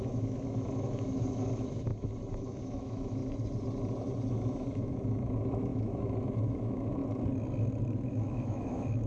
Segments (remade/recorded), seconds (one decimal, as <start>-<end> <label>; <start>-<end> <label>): 0.0-3.2 remade; 3.2-4.3 recorded; 4.3-7.0 remade; 7.0-7.8 recorded; 7.8-9.1 remade